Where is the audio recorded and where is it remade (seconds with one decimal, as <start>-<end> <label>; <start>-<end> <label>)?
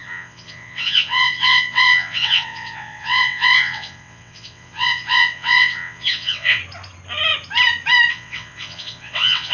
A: 0.0-6.6 remade; 6.6-8.1 recorded; 8.1-9.5 remade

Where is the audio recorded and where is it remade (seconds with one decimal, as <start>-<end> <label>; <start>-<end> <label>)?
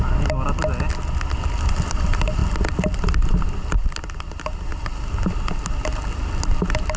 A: 0.0-7.0 recorded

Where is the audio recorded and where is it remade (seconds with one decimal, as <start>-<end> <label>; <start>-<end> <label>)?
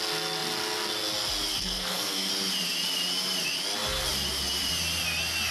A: 0.0-1.5 recorded; 1.5-2.3 remade; 2.3-5.5 recorded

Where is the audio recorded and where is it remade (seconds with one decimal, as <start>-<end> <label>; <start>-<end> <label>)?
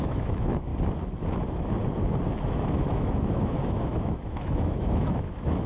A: 0.0-0.7 remade; 0.7-2.5 recorded; 2.5-5.7 remade